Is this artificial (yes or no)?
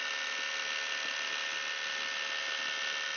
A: no